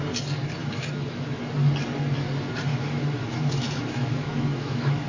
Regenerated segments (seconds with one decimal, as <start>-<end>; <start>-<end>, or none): 0.6-1.4; 2.7-5.1